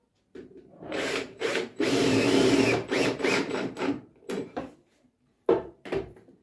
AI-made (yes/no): yes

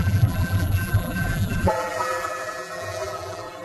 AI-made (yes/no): yes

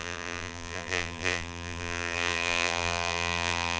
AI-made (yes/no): yes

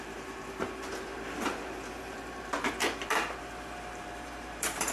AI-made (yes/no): yes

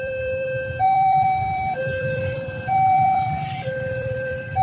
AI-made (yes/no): yes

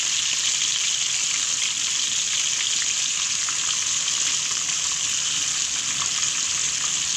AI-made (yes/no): no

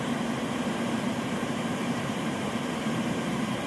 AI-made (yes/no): yes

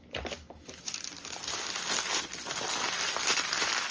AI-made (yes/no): no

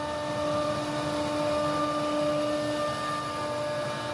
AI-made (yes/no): no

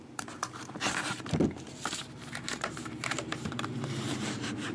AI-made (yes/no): yes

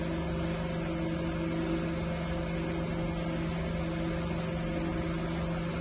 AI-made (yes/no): no